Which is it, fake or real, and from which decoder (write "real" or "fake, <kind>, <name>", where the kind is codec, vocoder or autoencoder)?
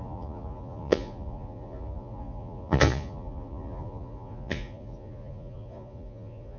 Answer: fake, vocoder, Vocos